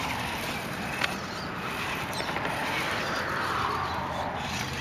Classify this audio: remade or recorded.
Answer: remade